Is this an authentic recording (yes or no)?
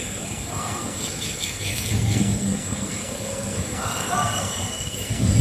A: no